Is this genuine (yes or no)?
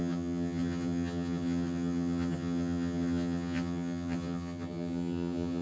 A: no